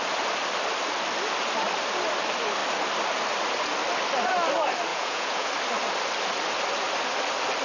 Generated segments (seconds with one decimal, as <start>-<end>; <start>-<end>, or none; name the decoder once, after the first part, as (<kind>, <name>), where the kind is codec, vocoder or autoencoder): 4.9-5.5 (vocoder, Vocos)